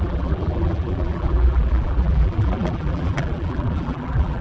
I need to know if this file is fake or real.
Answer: fake